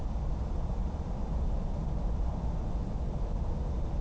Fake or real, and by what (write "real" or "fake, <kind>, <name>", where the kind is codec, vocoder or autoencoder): real